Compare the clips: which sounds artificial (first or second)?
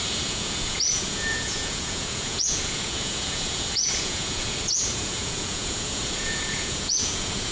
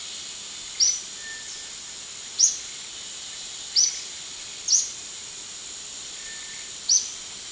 first